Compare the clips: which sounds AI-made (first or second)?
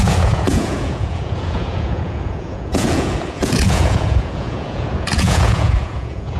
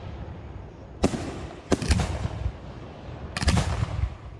first